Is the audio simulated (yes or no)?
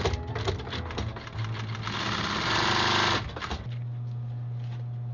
no